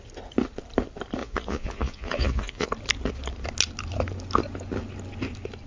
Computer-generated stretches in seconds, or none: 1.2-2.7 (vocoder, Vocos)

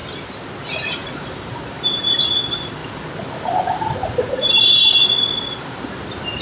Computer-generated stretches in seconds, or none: 0.6-2.8 (vocoder, BigVGAN v2); 4.3-5.1

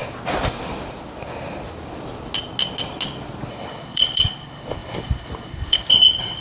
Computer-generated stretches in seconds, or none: 3.5-6.4 (codec, HILCodec)

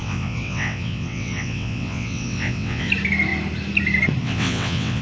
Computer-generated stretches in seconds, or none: 0.0-2.9 (vocoder, WaveNeXt); 4.2-5.0